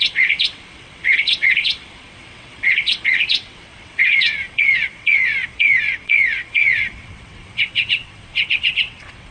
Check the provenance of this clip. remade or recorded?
remade